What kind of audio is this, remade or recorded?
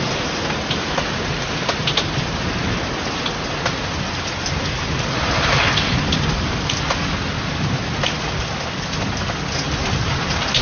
recorded